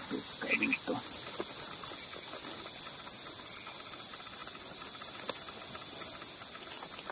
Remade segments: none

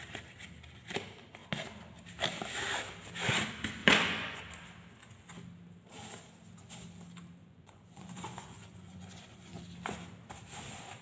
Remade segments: 3.8-4.4; 7.4-9.6

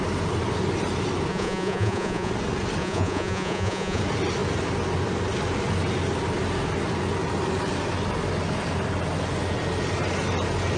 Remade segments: 1.3-2.3; 2.8-4.0

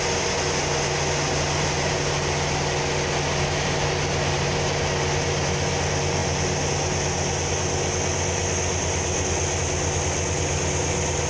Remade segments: none

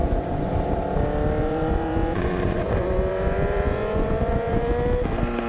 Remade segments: 0.0-0.5; 1.4-4.7

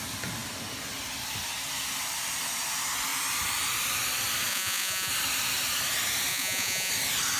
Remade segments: 4.5-5.1; 6.3-6.9

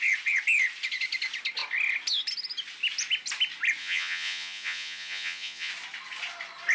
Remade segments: 3.8-5.7

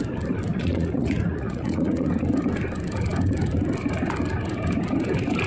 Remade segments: 0.5-2.1